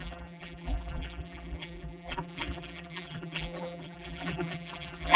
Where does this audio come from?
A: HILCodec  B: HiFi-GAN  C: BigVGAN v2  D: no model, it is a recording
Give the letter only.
C